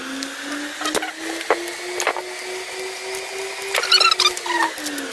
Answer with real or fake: real